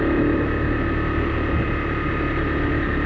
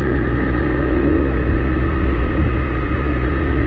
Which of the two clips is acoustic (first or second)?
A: first